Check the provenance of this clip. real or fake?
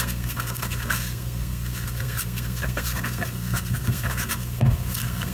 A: fake